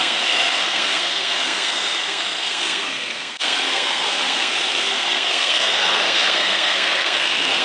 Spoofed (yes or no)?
yes